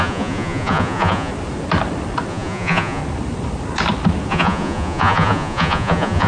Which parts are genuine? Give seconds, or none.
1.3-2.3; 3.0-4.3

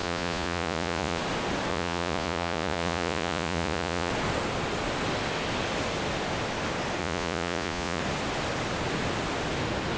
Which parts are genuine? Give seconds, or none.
1.2-1.7; 4.1-7.0; 8.0-10.0

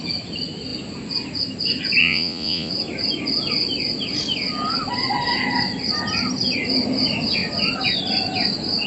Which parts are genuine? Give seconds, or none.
0.0-2.0; 2.7-8.9

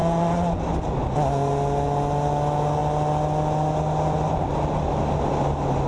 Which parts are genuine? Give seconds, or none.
0.6-5.9